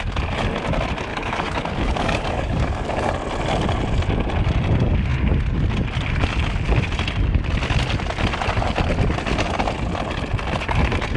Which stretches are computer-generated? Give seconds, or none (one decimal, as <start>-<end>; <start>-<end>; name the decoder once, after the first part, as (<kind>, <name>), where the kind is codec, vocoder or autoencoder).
1.1-3.1 (codec, DAC)